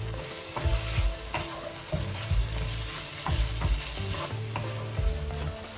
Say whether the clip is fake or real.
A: real